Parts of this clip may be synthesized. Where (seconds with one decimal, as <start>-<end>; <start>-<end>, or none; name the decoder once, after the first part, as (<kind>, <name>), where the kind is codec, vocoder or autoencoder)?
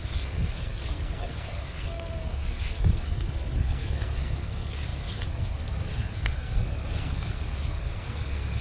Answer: 0.0-8.6 (codec, SNAC)